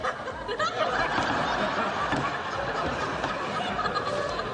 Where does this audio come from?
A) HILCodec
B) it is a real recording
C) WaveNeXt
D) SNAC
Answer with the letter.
B